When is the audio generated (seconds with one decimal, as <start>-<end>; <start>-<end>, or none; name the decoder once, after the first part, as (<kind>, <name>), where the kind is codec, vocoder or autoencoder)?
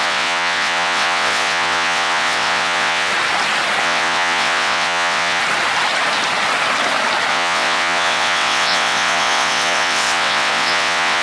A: 0.0-3.1 (vocoder, WaveNeXt); 3.8-5.4; 7.3-11.2